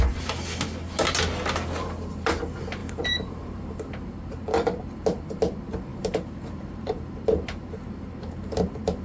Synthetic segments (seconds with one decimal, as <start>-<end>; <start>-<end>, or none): 2.8-3.7; 5.9-8.5